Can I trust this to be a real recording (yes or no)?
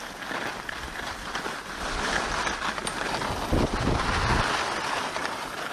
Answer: yes